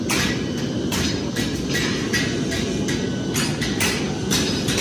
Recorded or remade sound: recorded